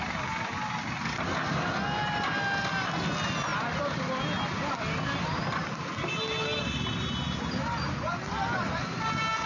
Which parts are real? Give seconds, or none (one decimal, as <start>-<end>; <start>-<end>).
0.0-9.5